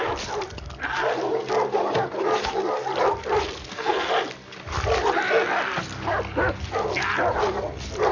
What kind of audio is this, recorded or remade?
recorded